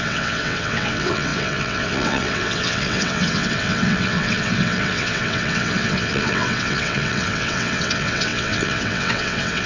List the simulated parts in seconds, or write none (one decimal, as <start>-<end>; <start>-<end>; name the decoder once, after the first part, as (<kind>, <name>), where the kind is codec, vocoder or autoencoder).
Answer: 0.0-9.7 (vocoder, WaveNeXt)